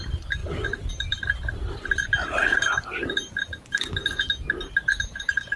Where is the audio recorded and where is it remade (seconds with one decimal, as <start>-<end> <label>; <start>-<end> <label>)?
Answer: 0.0-2.4 remade; 2.4-3.0 recorded; 3.0-4.0 remade; 4.0-4.5 recorded; 4.5-5.6 remade